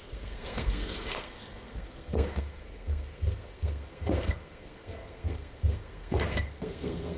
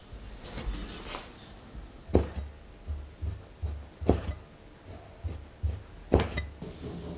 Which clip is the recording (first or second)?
second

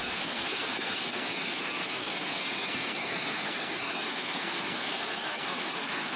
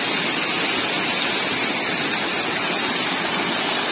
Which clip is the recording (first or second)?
second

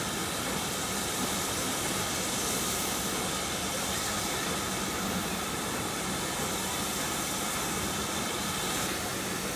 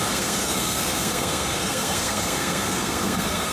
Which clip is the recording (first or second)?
first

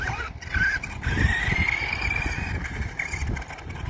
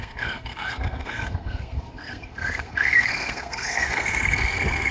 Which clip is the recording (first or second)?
first